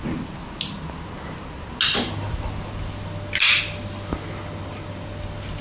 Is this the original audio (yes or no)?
yes